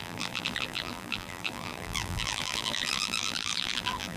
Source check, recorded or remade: remade